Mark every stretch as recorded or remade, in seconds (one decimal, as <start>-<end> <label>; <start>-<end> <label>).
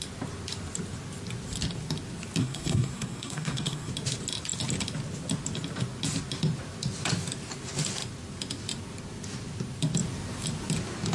0.0-2.4 recorded; 2.4-3.9 remade; 3.9-11.1 recorded